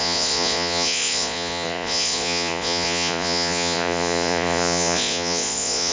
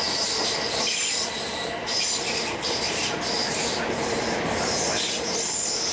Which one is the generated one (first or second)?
first